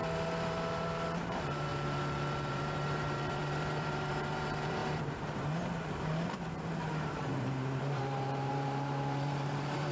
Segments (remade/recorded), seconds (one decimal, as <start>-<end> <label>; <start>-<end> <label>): 0.0-1.7 remade; 1.7-2.5 recorded; 2.5-9.9 remade